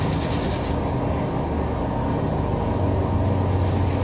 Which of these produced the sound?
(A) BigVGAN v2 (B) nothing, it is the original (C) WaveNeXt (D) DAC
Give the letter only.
B